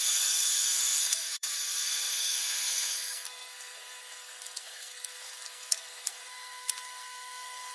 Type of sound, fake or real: fake